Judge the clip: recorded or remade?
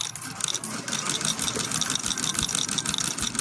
recorded